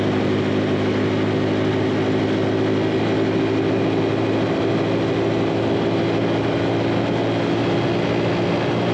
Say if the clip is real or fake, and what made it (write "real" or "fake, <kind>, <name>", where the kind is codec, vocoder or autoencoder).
real